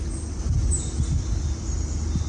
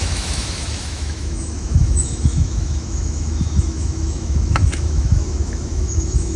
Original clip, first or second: first